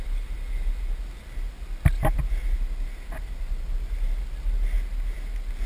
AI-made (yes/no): no